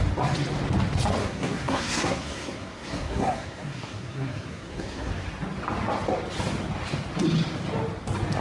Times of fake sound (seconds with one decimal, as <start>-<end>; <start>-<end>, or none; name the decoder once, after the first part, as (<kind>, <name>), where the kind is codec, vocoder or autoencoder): 1.2-5.1 (codec, SNAC)